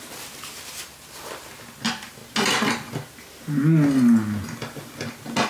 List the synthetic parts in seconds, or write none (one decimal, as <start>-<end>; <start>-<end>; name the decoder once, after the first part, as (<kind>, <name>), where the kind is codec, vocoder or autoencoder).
none